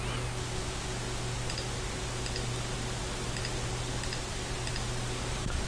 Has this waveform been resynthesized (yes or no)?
no